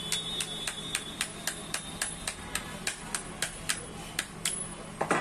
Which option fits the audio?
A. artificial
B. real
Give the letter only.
B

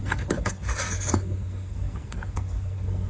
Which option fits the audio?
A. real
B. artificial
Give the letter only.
B